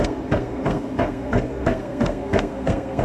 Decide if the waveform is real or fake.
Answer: fake